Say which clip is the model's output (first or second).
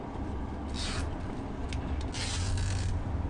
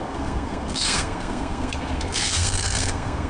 second